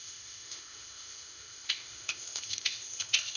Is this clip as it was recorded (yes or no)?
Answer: no